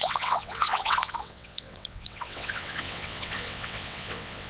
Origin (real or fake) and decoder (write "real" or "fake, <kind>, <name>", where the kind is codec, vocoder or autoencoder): fake, vocoder, WaveNeXt